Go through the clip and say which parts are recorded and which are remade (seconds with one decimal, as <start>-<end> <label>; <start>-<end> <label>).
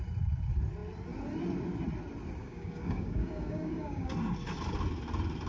0.0-2.4 recorded; 2.4-4.1 remade; 4.1-5.5 recorded